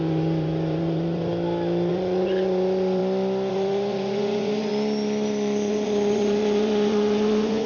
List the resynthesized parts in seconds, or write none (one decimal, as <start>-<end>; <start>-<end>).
0.0-1.3; 1.9-3.0; 3.5-4.7; 5.7-7.7